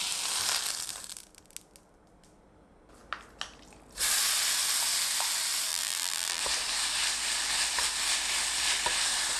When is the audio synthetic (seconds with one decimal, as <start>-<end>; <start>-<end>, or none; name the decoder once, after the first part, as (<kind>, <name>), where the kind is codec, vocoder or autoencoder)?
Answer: 5.7-6.4 (vocoder, BigVGAN v2)

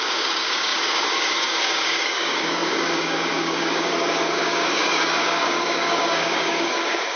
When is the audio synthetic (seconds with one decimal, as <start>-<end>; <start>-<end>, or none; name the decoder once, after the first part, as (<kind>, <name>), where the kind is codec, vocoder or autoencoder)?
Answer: 0.0-7.2 (codec, DAC)

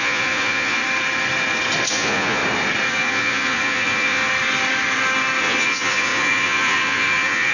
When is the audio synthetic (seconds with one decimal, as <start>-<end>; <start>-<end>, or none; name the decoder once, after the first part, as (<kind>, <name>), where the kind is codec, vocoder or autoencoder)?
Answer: 0.0-0.8 (vocoder, Vocos); 1.9-2.4; 2.9-4.2; 5.4-7.5